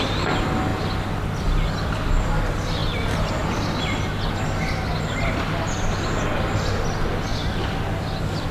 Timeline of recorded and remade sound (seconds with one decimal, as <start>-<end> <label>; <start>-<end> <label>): 0.0-2.8 recorded; 2.8-4.0 remade; 4.0-7.3 recorded; 7.3-7.8 remade; 7.8-8.5 recorded